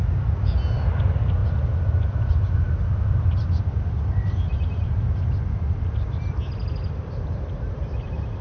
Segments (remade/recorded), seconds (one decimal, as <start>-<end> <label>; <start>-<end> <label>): 0.0-8.4 recorded